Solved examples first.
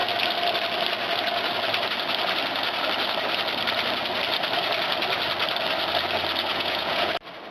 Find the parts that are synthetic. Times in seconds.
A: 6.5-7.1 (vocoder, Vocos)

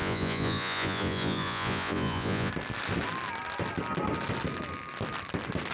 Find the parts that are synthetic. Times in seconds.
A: 0.0-2.5 (vocoder, Vocos)

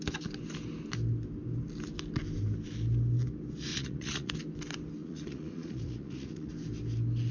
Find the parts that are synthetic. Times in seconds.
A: 3.7-4.3 (vocoder, Vocos); 5.0-6.5

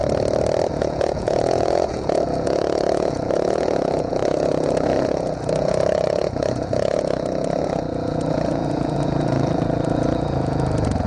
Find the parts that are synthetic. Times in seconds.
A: 0.7-11.1 (vocoder, Vocos)

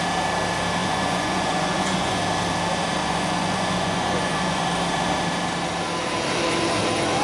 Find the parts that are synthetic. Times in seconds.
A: 0.8-2.2 (vocoder, Vocos); 3.0-4.6